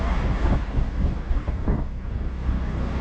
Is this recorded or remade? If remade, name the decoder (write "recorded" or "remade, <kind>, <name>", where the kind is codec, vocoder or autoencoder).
remade, codec, DAC